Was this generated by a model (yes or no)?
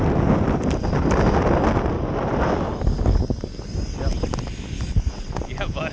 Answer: no